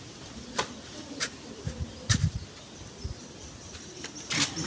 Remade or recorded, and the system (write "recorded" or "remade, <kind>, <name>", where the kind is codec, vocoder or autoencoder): recorded